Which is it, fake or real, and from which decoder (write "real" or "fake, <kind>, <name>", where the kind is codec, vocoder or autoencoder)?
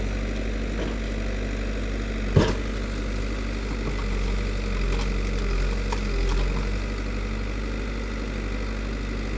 real